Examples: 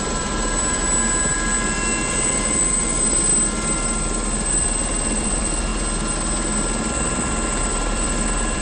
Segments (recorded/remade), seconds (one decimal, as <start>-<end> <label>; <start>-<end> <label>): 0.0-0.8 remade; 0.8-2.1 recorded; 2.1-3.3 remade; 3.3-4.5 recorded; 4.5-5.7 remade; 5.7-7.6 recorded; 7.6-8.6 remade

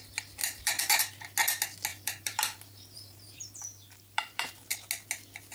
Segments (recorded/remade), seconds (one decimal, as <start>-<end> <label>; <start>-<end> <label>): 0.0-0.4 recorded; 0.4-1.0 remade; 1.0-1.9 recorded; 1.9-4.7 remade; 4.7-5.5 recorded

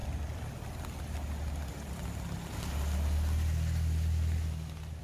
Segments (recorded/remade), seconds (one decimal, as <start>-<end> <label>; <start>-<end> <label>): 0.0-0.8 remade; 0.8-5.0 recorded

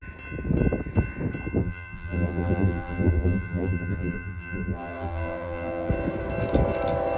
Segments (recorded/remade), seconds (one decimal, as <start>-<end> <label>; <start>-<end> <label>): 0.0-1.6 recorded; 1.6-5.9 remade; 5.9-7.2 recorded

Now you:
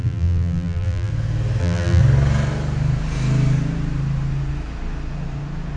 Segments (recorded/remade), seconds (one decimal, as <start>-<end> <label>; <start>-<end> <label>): 0.0-1.1 remade; 1.1-1.6 recorded; 1.6-2.0 remade; 2.0-5.8 recorded

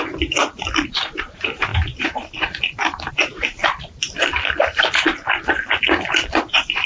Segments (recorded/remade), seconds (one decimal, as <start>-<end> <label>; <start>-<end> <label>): 0.0-1.7 remade; 1.7-3.1 recorded; 3.1-3.6 remade; 3.6-6.5 recorded; 6.5-6.9 remade